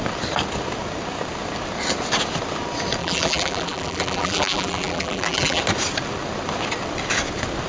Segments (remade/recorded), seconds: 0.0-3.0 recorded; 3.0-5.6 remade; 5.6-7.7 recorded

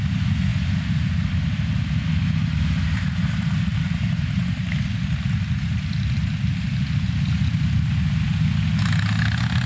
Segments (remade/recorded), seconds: 0.0-3.7 recorded; 3.7-4.4 remade; 4.4-9.7 recorded

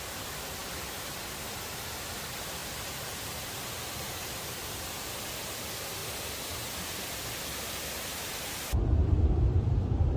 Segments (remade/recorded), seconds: 0.0-2.6 recorded; 2.6-5.2 remade; 5.2-9.0 recorded; 9.0-9.7 remade; 9.7-10.2 recorded

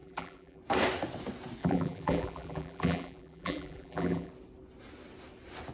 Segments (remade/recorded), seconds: 0.0-0.6 remade; 0.6-1.6 recorded; 1.6-4.3 remade; 4.3-5.7 recorded